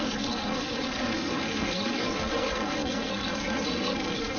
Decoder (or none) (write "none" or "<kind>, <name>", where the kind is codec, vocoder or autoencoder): codec, SNAC